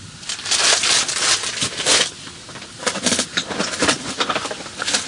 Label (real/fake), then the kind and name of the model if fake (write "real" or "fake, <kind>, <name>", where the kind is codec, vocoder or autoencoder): fake, vocoder, BigVGAN v2